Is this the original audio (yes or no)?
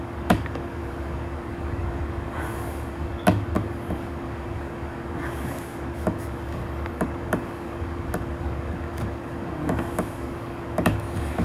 no